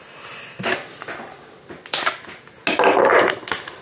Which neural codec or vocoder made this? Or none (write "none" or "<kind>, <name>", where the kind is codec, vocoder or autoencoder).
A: none